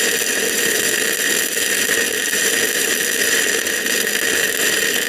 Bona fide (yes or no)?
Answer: yes